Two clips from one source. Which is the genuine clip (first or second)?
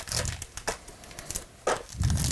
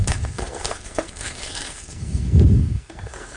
first